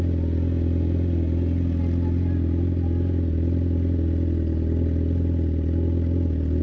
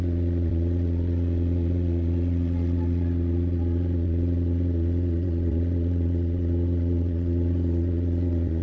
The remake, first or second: second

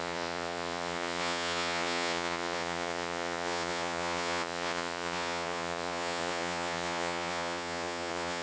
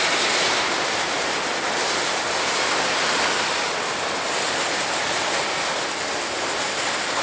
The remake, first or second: first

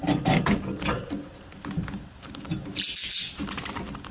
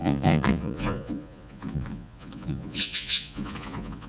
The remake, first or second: second